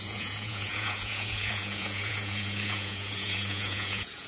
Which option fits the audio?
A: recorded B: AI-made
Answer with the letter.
B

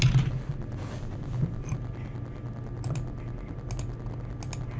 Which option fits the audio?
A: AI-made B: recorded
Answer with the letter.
B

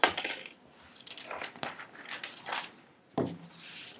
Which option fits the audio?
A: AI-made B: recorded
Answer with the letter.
B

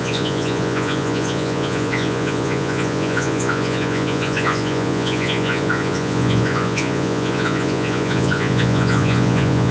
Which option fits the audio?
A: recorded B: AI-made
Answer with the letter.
B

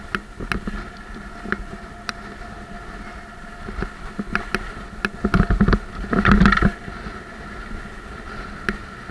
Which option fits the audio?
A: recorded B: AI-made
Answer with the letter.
A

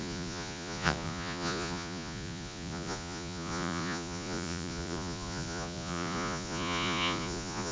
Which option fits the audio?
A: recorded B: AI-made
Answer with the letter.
B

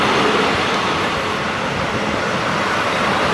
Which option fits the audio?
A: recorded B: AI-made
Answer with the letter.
A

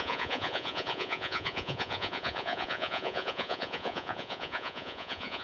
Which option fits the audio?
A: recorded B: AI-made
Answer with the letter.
B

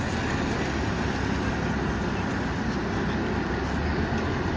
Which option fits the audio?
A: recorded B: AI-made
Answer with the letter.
A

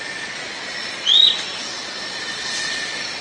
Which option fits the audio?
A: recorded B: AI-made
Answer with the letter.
B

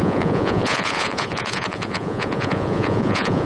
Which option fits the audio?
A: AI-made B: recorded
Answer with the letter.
A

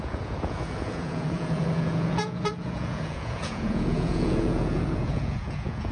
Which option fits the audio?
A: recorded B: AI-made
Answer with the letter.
B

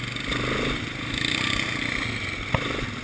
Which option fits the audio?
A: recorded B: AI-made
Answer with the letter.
A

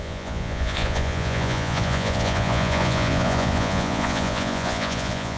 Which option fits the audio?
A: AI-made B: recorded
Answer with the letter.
A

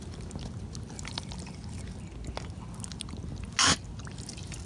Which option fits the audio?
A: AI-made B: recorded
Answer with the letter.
B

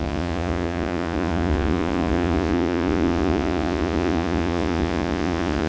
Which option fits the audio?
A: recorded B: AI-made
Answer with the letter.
B